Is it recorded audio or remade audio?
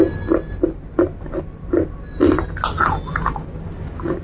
recorded